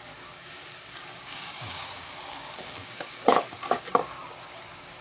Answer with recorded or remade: remade